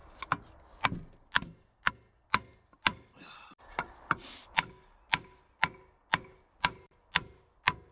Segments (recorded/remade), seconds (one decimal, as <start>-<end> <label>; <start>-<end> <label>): 0.0-2.5 recorded; 2.5-4.3 remade; 4.3-7.9 recorded

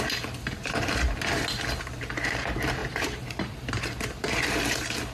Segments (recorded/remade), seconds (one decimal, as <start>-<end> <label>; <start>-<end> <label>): 0.0-2.8 recorded; 2.8-3.8 remade; 3.8-5.1 recorded

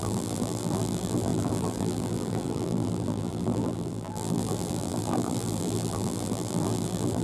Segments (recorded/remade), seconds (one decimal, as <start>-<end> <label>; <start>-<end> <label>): 0.0-7.2 remade

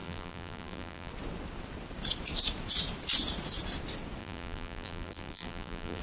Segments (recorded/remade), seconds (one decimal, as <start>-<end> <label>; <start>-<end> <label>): 0.0-1.1 remade; 1.1-4.2 recorded; 4.2-6.0 remade

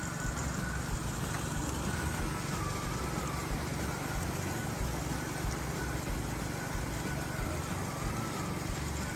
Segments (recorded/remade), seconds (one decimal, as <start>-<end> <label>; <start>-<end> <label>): 0.0-0.4 recorded; 0.4-1.6 remade; 1.6-2.5 recorded; 2.5-4.1 remade; 4.1-9.2 recorded

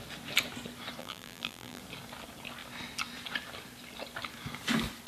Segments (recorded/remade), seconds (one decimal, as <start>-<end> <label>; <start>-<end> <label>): 0.0-1.0 recorded; 1.0-1.8 remade; 1.8-5.1 recorded

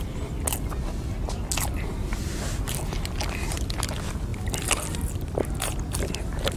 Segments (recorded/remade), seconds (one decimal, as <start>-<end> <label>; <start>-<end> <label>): 0.0-6.6 recorded

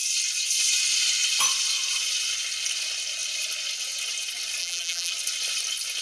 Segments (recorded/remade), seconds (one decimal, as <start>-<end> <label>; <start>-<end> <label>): 0.0-4.6 recorded; 4.6-5.1 remade; 5.1-6.0 recorded